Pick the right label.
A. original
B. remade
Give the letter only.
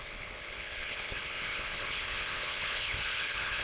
B